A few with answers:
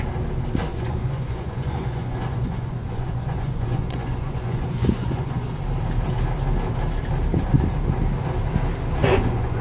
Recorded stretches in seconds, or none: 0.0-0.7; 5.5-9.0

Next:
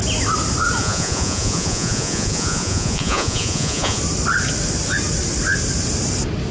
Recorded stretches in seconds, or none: 0.0-0.8; 4.0-6.5

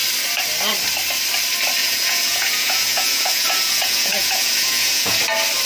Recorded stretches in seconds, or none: 0.0-1.8; 5.2-5.7

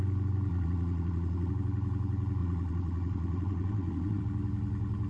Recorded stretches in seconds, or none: 0.0-0.5; 1.5-2.4; 4.2-5.1

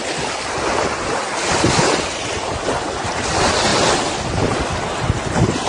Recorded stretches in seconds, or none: 0.0-5.7

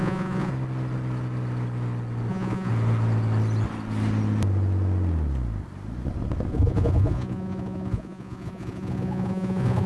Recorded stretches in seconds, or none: 0.5-2.3; 2.7-6.5